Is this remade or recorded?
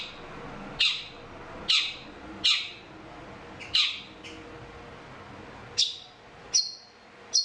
recorded